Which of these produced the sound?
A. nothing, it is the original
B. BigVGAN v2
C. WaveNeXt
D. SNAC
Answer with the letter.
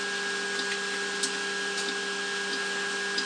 A